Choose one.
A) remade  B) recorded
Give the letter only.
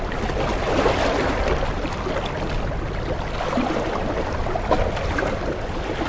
B